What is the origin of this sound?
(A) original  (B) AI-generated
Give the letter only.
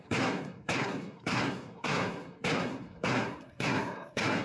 B